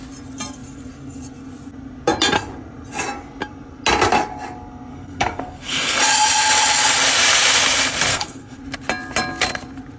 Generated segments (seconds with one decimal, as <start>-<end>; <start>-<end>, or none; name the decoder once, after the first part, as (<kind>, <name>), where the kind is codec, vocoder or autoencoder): 4.9-6.0 (codec, SNAC); 8.1-8.6